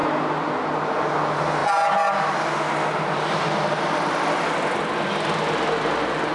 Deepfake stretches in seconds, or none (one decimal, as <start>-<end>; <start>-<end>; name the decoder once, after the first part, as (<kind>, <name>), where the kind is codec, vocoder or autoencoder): none